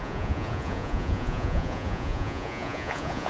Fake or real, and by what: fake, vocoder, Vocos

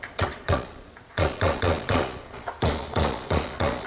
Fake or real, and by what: fake, vocoder, Vocos